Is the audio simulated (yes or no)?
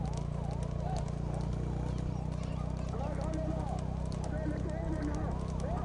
no